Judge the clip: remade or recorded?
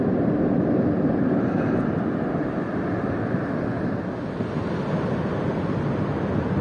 recorded